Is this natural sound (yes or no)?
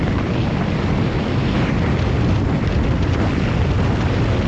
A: yes